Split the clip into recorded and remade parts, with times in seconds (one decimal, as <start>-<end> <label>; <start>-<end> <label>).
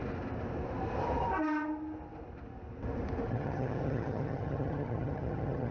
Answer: 0.0-3.3 recorded; 3.3-5.7 remade